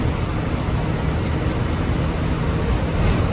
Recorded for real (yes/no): yes